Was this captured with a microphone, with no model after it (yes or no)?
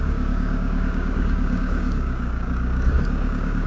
no